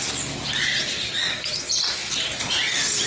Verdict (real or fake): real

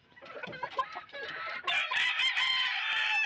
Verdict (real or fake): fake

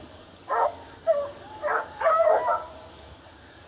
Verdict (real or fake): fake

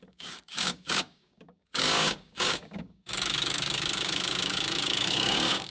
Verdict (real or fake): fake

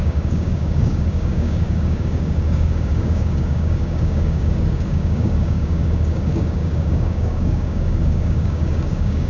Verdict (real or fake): fake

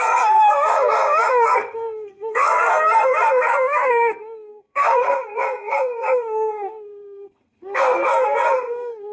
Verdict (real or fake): fake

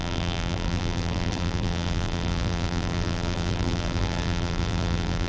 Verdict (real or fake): fake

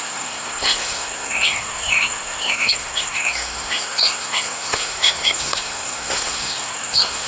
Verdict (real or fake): fake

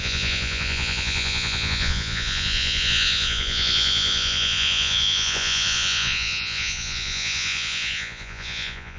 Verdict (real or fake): fake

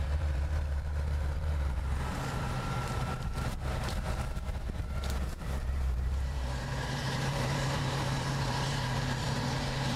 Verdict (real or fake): fake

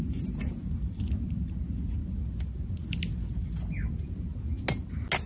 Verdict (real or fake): real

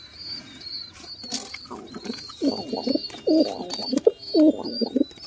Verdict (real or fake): real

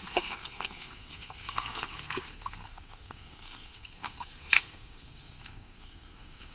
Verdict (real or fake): fake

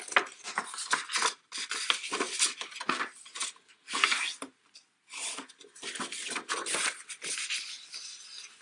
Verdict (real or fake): real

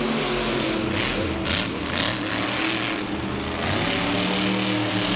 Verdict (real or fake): real